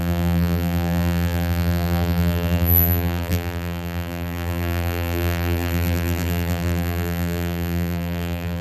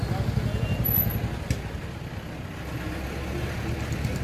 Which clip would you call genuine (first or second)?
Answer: second